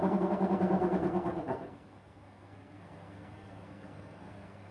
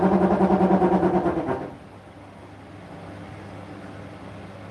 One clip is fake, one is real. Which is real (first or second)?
second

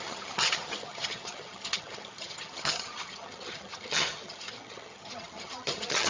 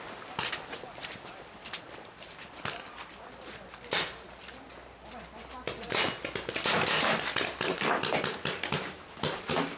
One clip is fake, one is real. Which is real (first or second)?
second